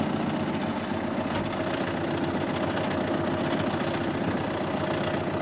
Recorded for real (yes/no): yes